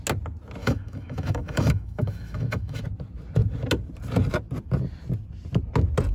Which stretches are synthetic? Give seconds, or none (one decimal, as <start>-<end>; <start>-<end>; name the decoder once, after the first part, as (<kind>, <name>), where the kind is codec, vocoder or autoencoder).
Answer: 0.6-2.8 (autoencoder, DAC-VAE)